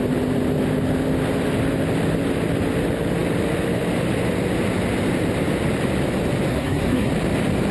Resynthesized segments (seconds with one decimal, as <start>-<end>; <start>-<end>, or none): 6.5-7.1